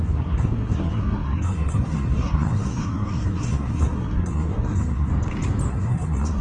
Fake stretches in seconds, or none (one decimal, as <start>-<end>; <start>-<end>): 0.0-5.1; 5.7-6.4